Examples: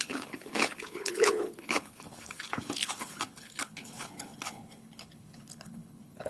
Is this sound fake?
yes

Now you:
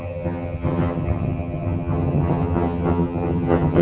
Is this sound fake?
yes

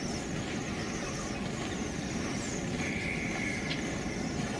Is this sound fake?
no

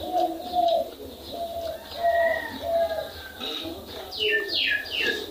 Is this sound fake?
no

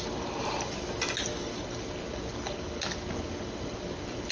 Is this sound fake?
no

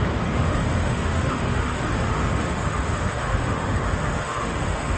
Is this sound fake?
yes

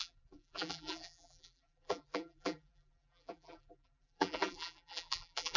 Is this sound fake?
yes